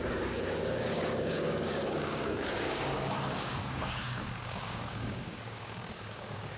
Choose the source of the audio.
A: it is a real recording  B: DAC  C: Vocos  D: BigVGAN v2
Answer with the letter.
B